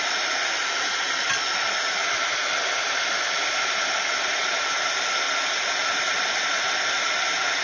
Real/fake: real